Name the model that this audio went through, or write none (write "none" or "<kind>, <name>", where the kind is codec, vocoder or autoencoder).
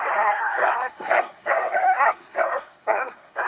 codec, SNAC